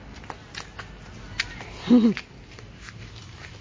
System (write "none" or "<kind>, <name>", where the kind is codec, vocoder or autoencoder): none